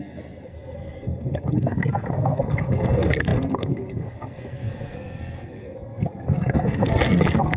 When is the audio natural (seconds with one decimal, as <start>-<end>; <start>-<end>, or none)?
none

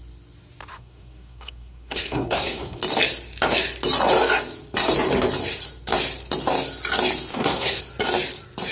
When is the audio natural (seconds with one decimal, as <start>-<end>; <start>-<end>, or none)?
0.0-0.7; 2.8-7.3; 7.8-8.7

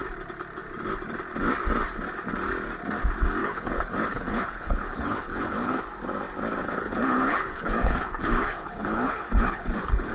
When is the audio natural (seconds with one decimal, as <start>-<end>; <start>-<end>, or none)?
0.0-3.4; 5.8-6.6